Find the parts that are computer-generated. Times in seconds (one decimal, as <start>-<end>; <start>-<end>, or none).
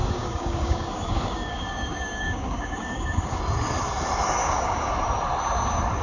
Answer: 0.0-3.4; 4.4-4.9